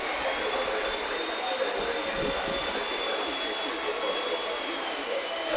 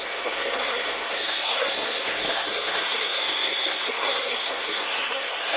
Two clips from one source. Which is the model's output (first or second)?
second